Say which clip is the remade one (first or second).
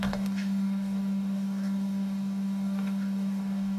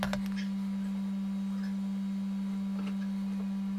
first